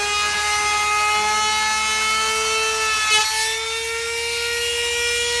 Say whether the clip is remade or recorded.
recorded